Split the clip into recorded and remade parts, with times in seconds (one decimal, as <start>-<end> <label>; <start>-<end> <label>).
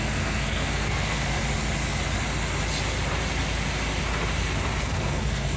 0.0-1.4 remade; 1.4-4.8 recorded; 4.8-5.6 remade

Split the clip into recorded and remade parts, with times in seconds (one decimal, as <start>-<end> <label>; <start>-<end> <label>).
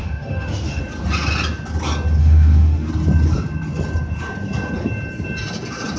0.0-0.8 remade; 0.8-2.2 recorded; 2.2-2.9 remade; 2.9-6.0 recorded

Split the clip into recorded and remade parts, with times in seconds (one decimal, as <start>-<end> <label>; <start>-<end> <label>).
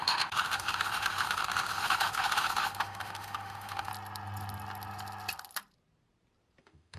0.0-3.9 remade; 3.9-6.6 recorded; 6.6-7.0 remade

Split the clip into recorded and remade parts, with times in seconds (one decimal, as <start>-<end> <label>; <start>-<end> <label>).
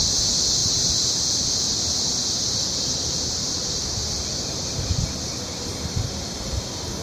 0.0-0.6 recorded; 0.6-4.8 remade; 4.8-7.0 recorded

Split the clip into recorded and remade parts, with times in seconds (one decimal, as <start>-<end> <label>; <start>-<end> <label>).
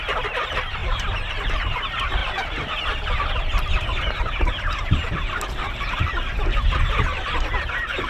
0.0-8.1 remade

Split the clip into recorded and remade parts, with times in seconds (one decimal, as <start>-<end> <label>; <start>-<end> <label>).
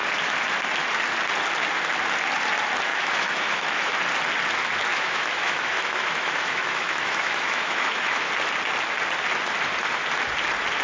0.0-2.9 recorded; 2.9-3.9 remade; 3.9-4.9 recorded; 4.9-8.3 remade; 8.3-10.8 recorded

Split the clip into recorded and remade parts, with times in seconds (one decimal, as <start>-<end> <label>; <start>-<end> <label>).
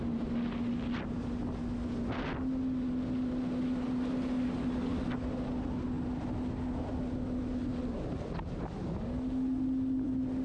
0.0-10.4 recorded